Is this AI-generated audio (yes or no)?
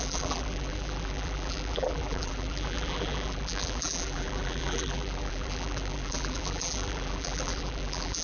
yes